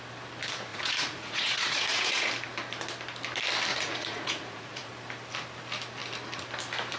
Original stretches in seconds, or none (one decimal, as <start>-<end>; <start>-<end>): 0.0-0.7; 2.3-3.7; 4.9-7.0